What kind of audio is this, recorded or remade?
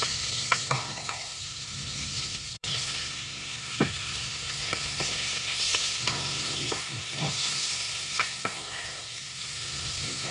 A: remade